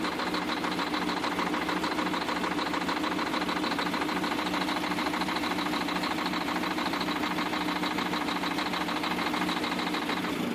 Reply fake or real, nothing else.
real